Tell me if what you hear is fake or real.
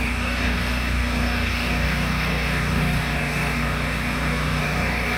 fake